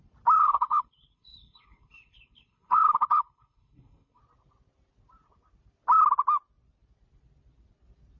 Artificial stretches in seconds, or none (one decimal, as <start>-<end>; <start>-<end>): 0.4-4.2